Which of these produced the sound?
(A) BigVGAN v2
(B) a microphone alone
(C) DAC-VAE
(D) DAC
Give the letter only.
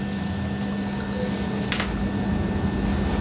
B